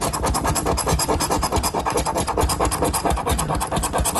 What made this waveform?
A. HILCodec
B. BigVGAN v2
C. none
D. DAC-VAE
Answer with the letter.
B